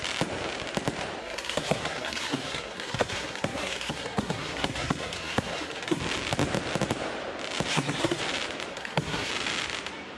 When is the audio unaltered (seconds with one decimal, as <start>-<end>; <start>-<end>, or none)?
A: 0.0-1.2; 6.0-7.7; 8.2-8.7; 9.3-10.2